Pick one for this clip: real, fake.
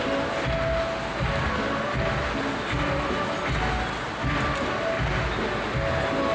real